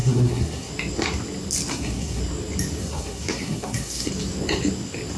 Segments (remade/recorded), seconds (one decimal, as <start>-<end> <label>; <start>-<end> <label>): 0.0-0.7 remade; 0.7-1.7 recorded; 1.7-2.2 remade; 2.2-2.8 recorded; 2.8-4.1 remade; 4.1-5.2 recorded